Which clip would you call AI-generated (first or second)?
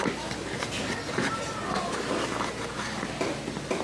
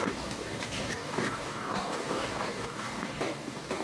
second